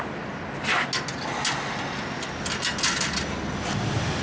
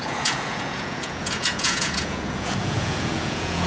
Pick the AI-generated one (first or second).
second